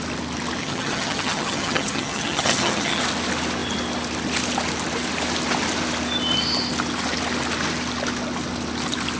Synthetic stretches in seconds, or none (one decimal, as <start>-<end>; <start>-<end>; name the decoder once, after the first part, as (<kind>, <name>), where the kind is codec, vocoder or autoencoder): 0.6-3.0 (vocoder, HiFi-GAN)